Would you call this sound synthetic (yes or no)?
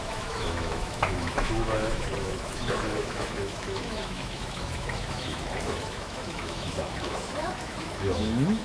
yes